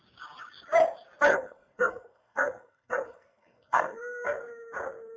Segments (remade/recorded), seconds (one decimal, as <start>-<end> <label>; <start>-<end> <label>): 0.0-1.3 recorded; 1.3-4.4 remade; 4.4-5.2 recorded